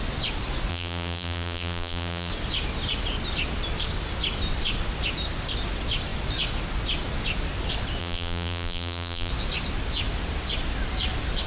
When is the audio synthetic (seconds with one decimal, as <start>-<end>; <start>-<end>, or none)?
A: 0.7-2.3; 8.0-9.3

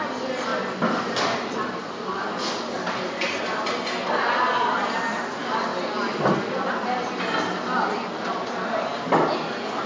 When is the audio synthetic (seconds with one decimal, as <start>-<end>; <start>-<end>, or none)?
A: 0.5-2.3

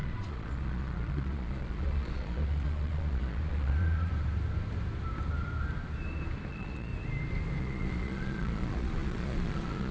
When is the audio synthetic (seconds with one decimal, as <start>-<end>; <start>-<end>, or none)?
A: 0.0-4.1; 6.5-6.9; 7.6-9.9